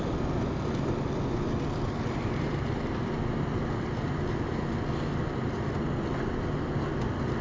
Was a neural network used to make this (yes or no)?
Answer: no